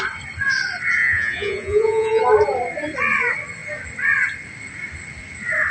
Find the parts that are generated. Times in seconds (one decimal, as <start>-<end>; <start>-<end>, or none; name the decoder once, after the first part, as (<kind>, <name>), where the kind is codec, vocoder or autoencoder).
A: 1.0-2.2 (vocoder, Vocos)